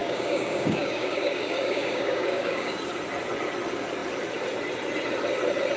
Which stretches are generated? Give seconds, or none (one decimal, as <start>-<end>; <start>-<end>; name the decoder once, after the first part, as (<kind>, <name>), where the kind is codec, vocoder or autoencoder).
0.0-2.8 (codec, DAC)